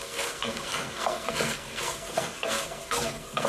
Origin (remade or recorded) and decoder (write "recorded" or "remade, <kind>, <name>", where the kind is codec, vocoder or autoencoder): remade, codec, SNAC